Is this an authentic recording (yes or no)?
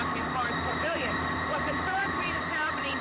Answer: no